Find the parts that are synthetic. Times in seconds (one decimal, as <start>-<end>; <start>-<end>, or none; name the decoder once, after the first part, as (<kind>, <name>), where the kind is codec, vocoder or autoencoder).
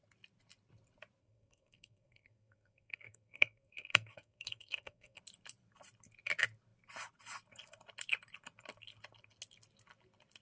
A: 1.2-5.2 (codec, SNAC)